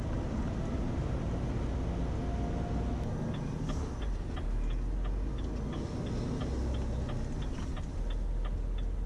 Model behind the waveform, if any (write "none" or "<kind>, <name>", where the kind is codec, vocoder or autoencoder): none